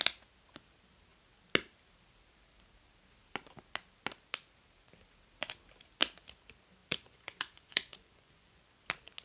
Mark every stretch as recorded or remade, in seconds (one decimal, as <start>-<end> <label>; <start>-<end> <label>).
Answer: 0.0-6.8 recorded; 6.8-8.6 remade; 8.6-9.2 recorded

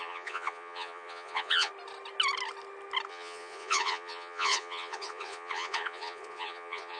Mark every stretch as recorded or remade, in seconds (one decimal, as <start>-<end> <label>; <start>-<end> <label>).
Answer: 0.0-1.7 remade; 1.7-3.1 recorded; 3.1-7.0 remade